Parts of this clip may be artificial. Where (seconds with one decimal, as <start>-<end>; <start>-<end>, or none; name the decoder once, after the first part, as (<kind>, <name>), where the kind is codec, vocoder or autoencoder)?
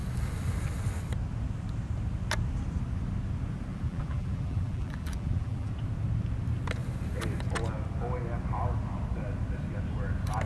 3.7-5.7 (vocoder, BigVGAN v2)